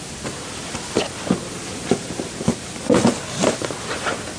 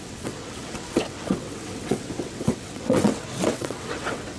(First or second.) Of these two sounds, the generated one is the second